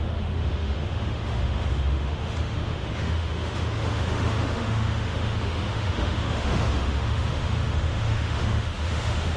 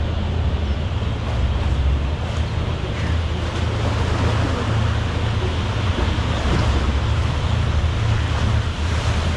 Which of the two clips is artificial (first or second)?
first